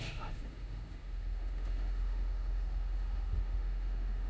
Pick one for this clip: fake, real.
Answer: fake